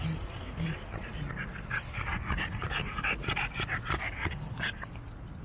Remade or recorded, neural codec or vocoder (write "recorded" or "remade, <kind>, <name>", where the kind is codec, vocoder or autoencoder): recorded